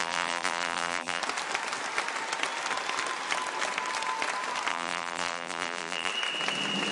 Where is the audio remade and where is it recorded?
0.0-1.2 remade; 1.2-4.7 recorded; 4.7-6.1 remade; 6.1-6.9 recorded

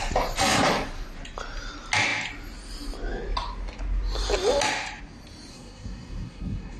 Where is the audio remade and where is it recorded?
0.0-5.5 recorded; 5.5-6.8 remade

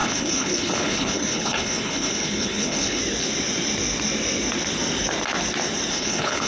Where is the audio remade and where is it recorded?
0.0-3.0 remade; 3.0-5.9 recorded; 5.9-6.5 remade

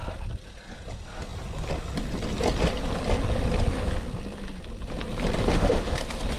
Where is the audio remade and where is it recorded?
0.0-5.5 recorded; 5.5-6.0 remade; 6.0-6.4 recorded

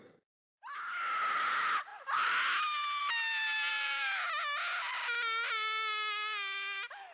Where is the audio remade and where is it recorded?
0.0-3.7 recorded; 3.7-4.4 remade; 4.4-7.1 recorded

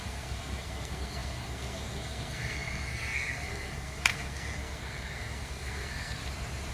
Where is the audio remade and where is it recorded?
0.0-6.2 remade; 6.2-6.7 recorded